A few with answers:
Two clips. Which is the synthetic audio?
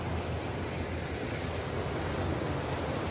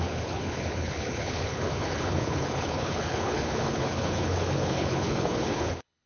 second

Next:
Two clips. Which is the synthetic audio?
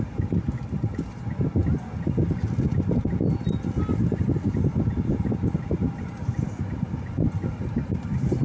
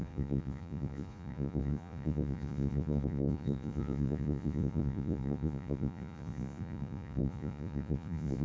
second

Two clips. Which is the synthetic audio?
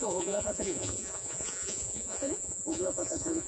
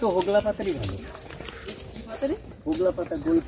first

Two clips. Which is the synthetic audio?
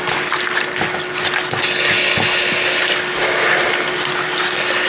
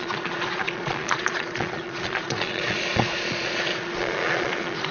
second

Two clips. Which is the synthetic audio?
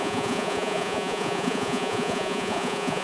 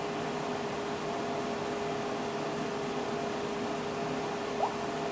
first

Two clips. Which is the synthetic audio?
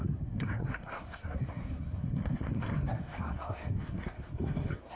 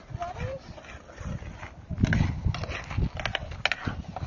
first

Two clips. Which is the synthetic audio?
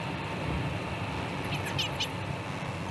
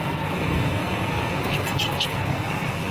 second